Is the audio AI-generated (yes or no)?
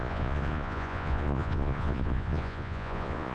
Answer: yes